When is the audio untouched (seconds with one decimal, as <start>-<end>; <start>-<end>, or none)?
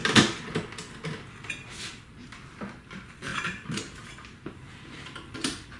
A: 0.0-1.9; 3.3-4.5